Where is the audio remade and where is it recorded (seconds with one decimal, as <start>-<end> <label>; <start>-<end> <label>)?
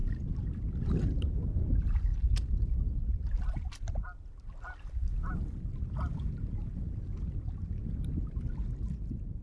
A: 0.0-9.4 recorded